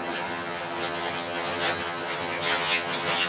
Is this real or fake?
fake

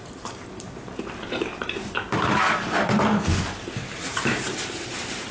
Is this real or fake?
fake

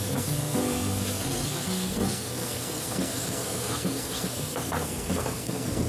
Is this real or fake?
fake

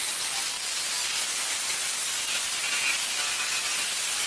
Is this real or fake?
real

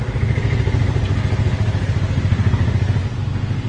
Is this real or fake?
real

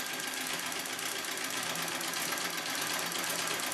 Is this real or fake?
real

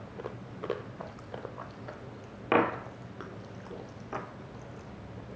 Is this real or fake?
real